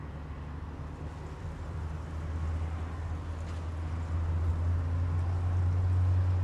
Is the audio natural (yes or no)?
yes